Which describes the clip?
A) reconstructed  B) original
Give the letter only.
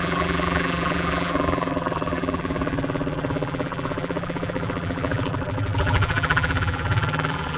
A